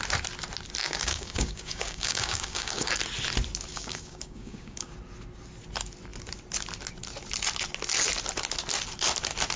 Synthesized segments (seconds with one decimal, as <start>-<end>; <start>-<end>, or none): 0.8-2.9; 3.7-4.9